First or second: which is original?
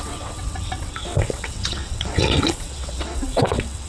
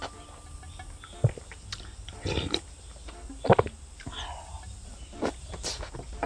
second